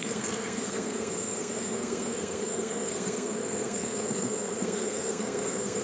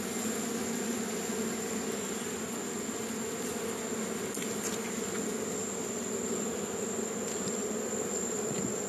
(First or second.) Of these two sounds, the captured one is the second